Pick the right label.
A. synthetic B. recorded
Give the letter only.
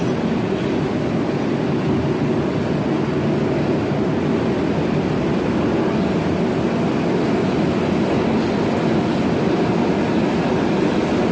B